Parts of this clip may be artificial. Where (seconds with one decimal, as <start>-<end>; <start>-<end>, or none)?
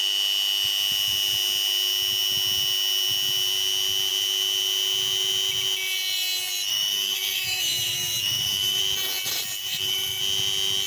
6.7-8.8; 9.6-10.2